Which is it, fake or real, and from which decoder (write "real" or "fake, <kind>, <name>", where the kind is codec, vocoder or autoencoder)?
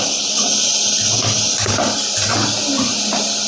real